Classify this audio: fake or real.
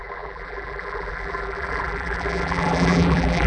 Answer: fake